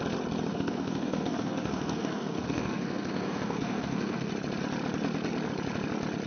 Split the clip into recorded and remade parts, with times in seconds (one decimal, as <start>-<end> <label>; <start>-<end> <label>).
0.0-0.5 recorded; 0.5-4.3 remade; 4.3-6.3 recorded